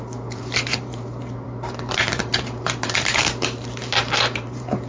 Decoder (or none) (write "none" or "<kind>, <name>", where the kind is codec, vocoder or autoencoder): vocoder, BigVGAN v2